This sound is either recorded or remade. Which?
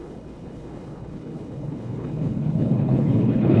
remade